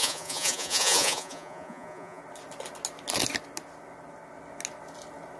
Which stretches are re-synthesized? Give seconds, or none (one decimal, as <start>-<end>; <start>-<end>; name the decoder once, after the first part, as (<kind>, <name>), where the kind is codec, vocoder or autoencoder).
0.0-2.2 (vocoder, Vocos)